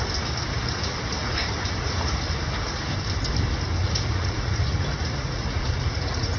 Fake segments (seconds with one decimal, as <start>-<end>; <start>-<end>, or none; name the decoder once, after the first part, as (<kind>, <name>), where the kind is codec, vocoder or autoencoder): 1.2-2.2 (vocoder, Vocos); 3.8-6.4